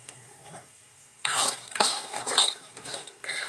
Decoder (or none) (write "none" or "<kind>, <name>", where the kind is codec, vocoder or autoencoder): codec, SNAC